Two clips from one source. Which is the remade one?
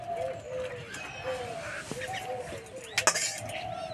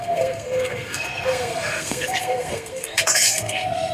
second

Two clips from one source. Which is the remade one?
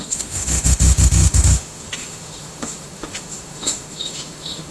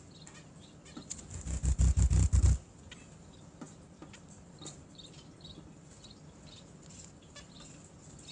first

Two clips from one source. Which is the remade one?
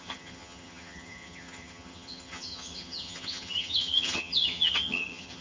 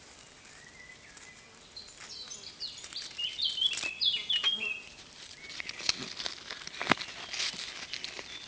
first